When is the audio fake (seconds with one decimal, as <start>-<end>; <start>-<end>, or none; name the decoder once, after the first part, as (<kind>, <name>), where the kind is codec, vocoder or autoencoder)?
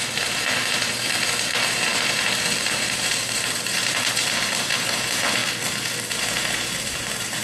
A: 0.0-5.4 (vocoder, BigVGAN v2); 6.1-7.4